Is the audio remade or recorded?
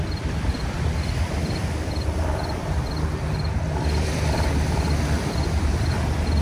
remade